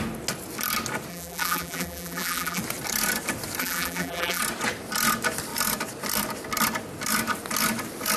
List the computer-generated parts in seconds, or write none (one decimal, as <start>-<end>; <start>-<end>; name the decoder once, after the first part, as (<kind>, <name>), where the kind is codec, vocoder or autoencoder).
1.1-2.6 (vocoder, BigVGAN v2); 3.6-4.4